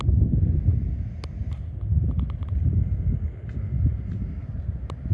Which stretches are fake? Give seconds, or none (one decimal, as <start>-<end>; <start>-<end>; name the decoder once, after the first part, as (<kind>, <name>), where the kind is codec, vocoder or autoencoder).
none